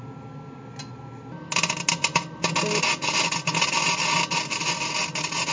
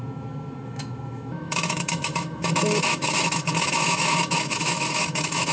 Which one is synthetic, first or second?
second